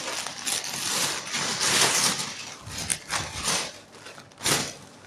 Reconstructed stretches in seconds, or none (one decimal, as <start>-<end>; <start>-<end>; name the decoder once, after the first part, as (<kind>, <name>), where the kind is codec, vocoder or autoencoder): none